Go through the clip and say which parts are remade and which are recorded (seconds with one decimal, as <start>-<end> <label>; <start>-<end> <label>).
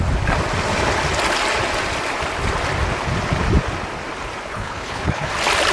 0.0-4.5 recorded; 4.5-5.3 remade; 5.3-5.7 recorded